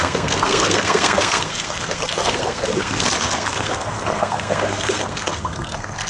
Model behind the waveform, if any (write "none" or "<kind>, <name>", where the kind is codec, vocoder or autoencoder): codec, SNAC